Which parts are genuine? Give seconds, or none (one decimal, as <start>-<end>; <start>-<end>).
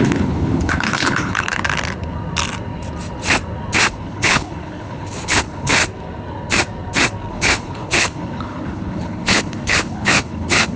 1.6-3.9; 5.8-7.3